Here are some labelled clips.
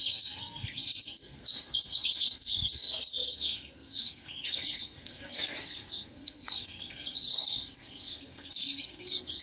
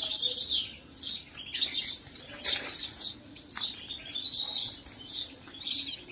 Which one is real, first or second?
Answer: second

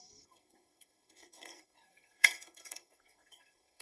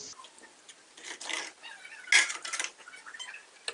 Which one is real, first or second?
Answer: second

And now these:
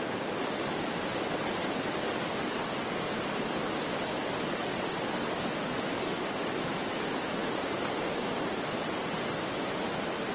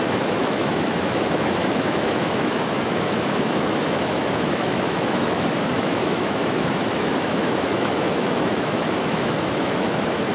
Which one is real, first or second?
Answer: first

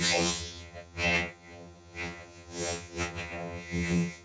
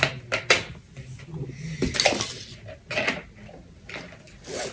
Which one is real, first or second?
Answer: second